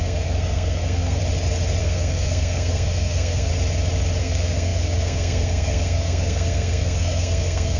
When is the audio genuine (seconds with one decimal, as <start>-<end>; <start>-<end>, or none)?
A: 1.2-1.8; 3.5-4.2